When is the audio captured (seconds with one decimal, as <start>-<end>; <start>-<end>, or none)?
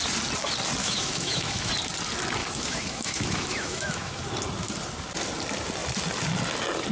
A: 0.0-0.8; 1.7-2.4; 4.2-6.9